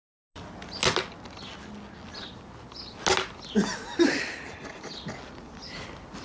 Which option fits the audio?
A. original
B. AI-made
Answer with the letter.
A